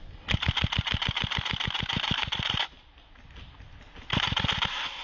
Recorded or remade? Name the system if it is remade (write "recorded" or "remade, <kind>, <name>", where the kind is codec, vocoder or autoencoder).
recorded